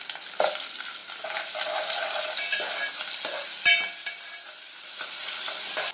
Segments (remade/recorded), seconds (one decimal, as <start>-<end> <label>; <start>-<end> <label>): 0.0-5.9 remade